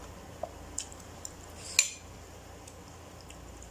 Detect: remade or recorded recorded